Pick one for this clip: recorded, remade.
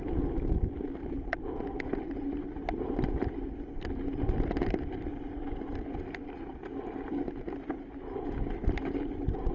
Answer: recorded